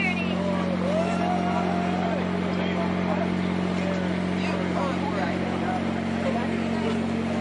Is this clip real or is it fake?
real